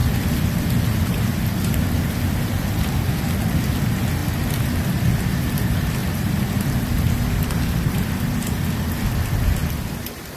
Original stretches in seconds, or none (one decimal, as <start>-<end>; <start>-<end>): 1.2-6.0; 8.7-10.4